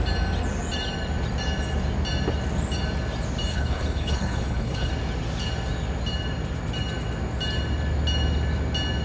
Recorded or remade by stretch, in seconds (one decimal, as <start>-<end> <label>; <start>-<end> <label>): 0.0-3.5 recorded; 3.5-4.9 remade; 4.9-9.0 recorded